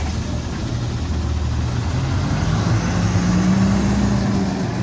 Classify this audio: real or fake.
real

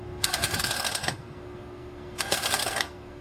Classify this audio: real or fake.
fake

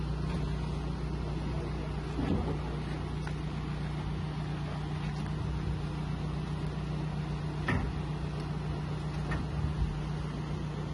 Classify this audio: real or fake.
real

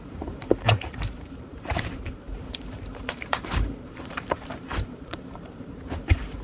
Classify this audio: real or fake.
fake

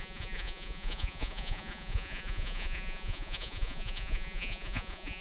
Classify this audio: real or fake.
fake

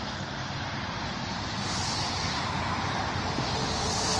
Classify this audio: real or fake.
real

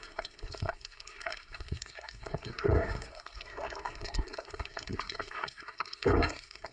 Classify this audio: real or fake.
fake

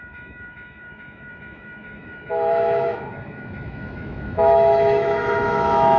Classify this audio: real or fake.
fake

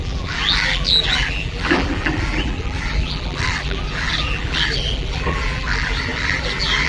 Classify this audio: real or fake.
fake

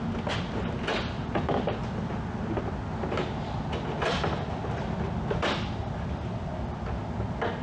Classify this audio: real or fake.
real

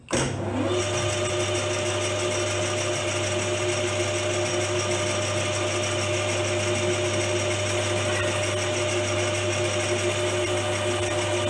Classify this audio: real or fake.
real